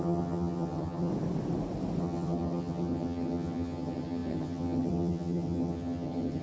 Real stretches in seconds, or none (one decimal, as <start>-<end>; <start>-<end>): 1.1-2.0